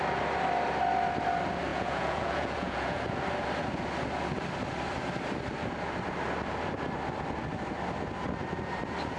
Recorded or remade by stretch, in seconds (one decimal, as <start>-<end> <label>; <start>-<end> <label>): 0.0-1.7 recorded; 1.7-3.0 remade; 3.0-9.2 recorded